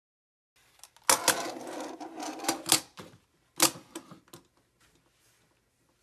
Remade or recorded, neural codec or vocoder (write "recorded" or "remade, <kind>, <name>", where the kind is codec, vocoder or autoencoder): recorded